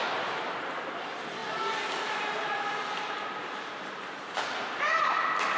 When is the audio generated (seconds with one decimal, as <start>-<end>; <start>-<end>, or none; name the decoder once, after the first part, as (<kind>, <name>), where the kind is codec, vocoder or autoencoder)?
none